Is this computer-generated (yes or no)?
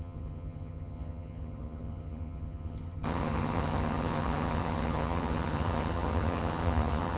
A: yes